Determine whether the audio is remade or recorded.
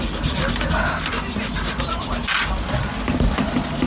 recorded